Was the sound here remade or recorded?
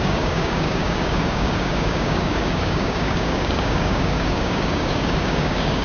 remade